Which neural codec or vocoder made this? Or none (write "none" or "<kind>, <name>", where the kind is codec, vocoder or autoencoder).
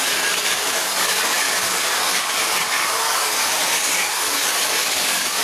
codec, DAC